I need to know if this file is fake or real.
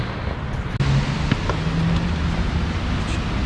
real